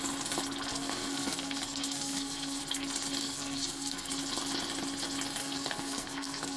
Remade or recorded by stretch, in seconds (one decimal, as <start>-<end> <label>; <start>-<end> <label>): 0.0-0.7 recorded; 0.7-2.6 remade; 2.6-3.2 recorded; 3.2-4.1 remade; 4.1-5.4 recorded; 5.4-6.6 remade